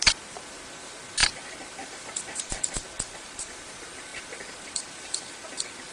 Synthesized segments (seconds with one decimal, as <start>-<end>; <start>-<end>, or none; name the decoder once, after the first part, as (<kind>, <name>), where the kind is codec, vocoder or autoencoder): 1.2-3.4 (vocoder, BigVGAN v2); 4.1-5.9